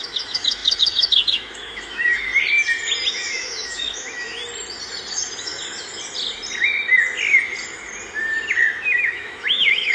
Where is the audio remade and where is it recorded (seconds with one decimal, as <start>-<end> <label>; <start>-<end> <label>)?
0.0-2.3 remade; 2.3-3.1 recorded; 3.1-4.4 remade; 4.4-5.1 recorded; 5.1-5.5 remade; 5.5-8.6 recorded; 8.6-9.9 remade